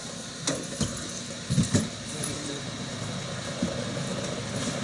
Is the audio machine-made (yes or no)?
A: no